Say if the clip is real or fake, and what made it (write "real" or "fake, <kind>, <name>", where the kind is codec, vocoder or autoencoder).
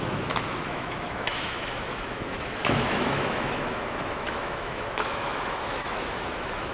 fake, autoencoder, DAC-VAE